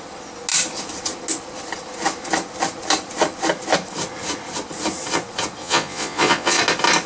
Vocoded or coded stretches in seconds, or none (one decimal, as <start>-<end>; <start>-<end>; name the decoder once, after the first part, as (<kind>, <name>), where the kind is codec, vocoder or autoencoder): 5.6-6.6 (vocoder, Vocos)